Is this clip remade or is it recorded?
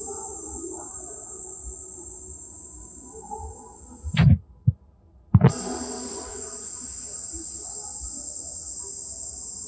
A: recorded